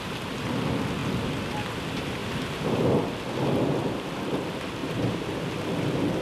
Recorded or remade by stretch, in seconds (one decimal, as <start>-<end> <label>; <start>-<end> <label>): 0.0-4.8 recorded; 4.8-5.5 remade; 5.5-6.2 recorded

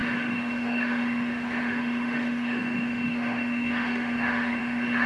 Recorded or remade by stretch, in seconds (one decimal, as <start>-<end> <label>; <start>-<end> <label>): 0.0-5.1 remade

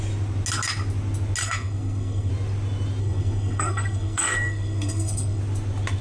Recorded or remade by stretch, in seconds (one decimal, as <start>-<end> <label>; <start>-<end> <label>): 0.0-1.4 recorded; 1.4-2.3 remade; 2.3-3.0 recorded; 3.0-5.4 remade; 5.4-6.0 recorded

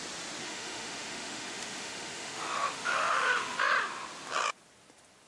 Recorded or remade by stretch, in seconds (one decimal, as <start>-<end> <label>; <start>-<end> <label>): 0.0-0.4 recorded; 0.4-3.6 remade; 3.6-5.3 recorded

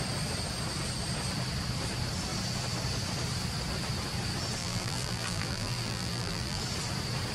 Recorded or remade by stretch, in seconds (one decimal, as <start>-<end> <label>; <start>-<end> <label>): 0.0-4.6 recorded; 4.6-6.6 remade; 6.6-7.3 recorded

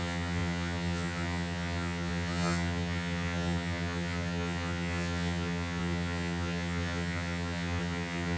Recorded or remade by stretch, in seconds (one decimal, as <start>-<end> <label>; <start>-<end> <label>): 0.0-8.4 remade

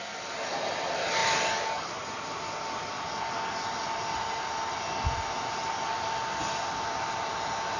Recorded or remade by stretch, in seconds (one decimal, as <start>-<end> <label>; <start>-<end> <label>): 0.0-1.2 recorded; 1.2-2.4 remade; 2.4-7.8 recorded